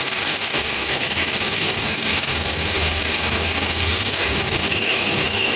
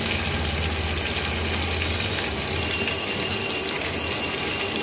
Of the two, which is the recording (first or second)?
second